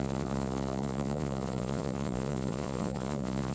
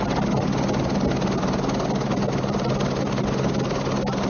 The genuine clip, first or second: second